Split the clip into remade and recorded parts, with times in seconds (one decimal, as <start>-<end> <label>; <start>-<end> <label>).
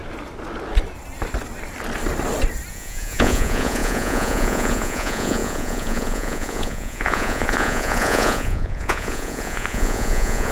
0.0-2.7 recorded; 2.7-10.5 remade